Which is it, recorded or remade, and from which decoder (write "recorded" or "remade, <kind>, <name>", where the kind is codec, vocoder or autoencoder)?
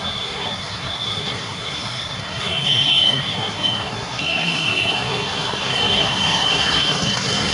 remade, codec, SNAC